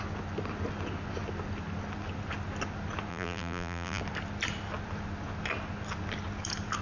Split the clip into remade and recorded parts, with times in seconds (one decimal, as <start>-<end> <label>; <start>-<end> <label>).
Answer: 0.0-3.1 recorded; 3.1-4.0 remade; 4.0-6.8 recorded